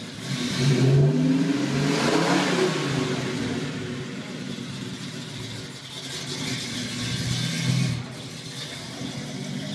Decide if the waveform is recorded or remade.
recorded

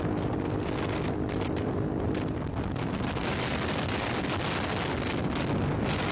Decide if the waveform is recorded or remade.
recorded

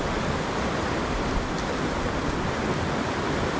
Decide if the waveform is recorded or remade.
recorded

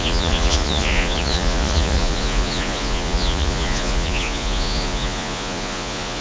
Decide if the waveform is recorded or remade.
remade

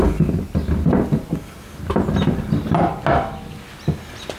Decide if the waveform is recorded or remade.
recorded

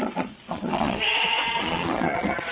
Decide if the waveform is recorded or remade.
remade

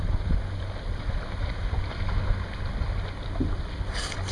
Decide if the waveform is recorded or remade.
recorded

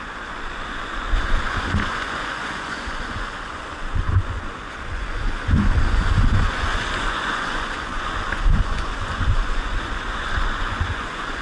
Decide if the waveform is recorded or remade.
remade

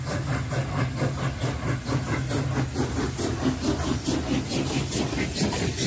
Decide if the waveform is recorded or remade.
recorded